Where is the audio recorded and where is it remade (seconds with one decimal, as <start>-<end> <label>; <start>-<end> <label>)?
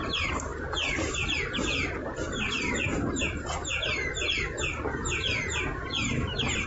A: 0.0-5.1 recorded; 5.1-6.1 remade; 6.1-6.7 recorded